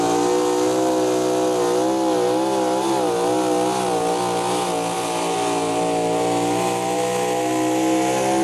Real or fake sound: real